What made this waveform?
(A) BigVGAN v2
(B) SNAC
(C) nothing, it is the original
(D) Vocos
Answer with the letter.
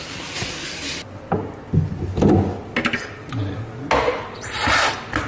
C